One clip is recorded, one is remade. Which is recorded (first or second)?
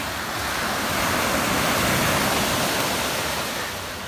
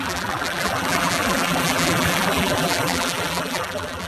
first